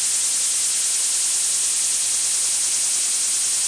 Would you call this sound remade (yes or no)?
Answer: no